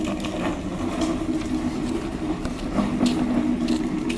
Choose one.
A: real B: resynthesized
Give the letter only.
A